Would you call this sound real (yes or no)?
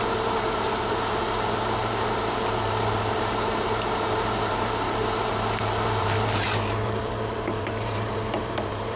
no